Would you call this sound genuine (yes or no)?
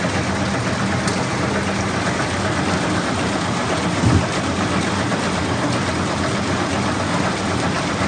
yes